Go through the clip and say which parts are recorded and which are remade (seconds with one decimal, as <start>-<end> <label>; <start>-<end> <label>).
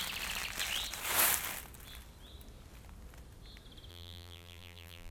0.0-3.9 recorded; 3.9-5.1 remade